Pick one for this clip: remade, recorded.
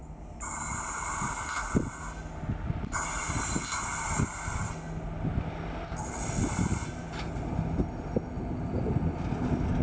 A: recorded